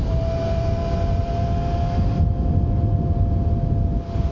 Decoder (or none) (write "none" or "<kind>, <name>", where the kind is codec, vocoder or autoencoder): none